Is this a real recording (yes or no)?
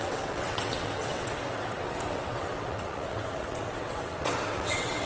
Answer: no